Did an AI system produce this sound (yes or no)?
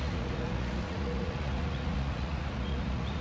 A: yes